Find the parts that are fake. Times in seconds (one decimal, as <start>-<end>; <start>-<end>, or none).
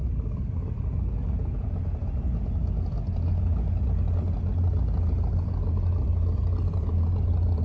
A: none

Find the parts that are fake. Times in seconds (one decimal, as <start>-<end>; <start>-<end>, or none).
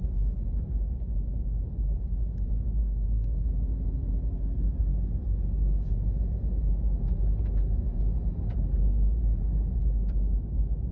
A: 2.8-3.5